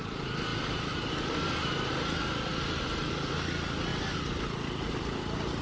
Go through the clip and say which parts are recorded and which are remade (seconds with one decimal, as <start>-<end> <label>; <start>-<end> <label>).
0.0-5.6 recorded